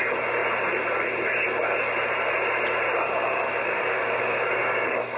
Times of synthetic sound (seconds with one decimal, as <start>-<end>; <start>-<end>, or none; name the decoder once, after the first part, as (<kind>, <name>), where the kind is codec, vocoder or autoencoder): 3.6-5.2 (codec, DAC)